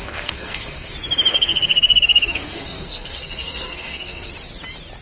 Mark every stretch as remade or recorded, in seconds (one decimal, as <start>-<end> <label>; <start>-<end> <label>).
0.0-0.9 remade; 0.9-1.3 recorded; 1.3-4.3 remade; 4.3-5.0 recorded